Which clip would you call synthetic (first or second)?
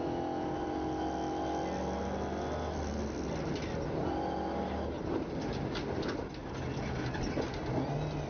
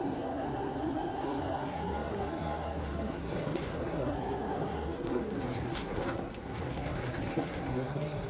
second